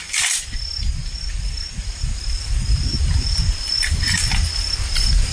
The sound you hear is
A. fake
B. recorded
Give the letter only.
B